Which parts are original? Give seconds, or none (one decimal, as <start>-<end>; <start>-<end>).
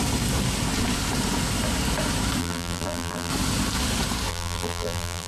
0.0-2.4; 3.3-4.3